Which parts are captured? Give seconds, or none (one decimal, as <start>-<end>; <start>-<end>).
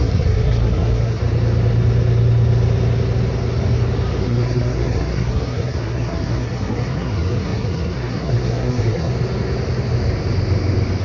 1.2-4.2; 9.1-11.0